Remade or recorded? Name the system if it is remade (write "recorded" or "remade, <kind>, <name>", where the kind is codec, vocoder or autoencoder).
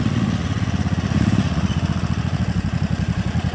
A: remade, vocoder, Vocos